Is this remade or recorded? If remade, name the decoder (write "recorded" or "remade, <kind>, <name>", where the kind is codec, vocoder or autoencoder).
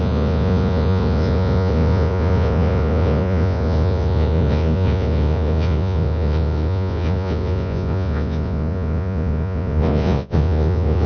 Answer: remade, vocoder, Vocos